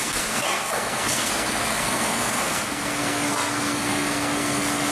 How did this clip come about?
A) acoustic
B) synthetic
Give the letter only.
B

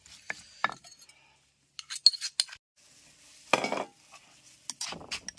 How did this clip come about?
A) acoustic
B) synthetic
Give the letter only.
A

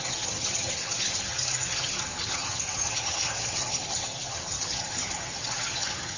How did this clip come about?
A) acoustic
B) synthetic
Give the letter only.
B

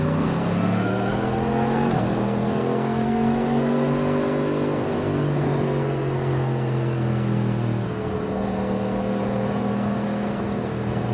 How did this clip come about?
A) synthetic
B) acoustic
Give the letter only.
A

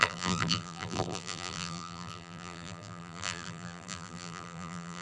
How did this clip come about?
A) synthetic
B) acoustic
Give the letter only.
A